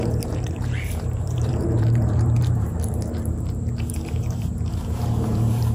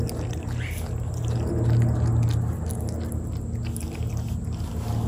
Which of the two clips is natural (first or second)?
second